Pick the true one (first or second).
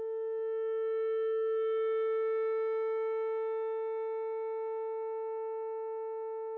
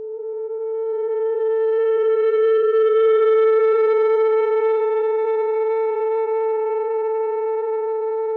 first